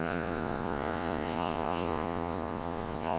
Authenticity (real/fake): fake